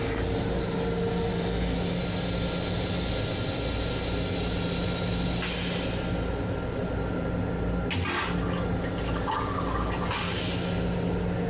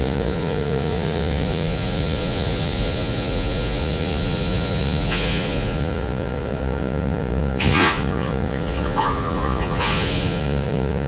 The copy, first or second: second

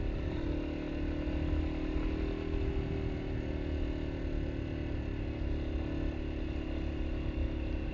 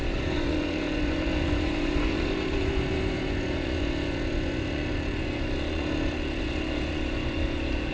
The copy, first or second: second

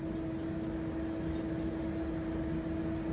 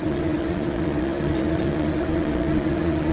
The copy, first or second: second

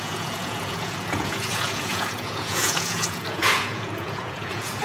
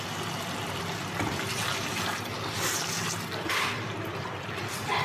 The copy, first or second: first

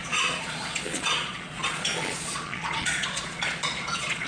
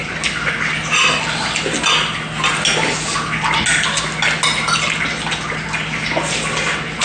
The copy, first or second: first